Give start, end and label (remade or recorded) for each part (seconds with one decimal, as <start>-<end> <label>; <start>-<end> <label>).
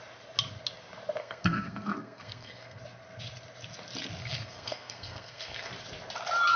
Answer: 0.0-1.2 recorded; 1.2-2.8 remade; 2.8-4.2 recorded; 4.2-5.7 remade; 5.7-6.6 recorded